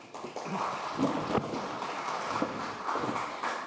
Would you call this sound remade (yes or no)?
no